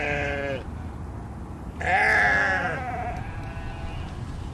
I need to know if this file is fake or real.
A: real